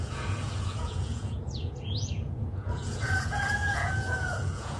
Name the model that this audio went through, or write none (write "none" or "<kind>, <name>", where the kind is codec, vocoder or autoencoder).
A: vocoder, Vocos